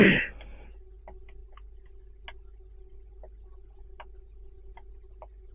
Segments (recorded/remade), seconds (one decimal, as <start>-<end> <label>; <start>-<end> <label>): 0.0-5.5 recorded